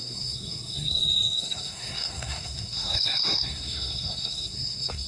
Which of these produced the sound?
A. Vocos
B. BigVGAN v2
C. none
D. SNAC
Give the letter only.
D